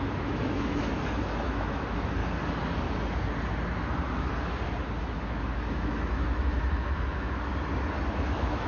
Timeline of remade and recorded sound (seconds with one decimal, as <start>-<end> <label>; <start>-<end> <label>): 0.0-2.2 remade; 2.2-5.0 recorded; 5.0-7.5 remade; 7.5-8.1 recorded; 8.1-8.7 remade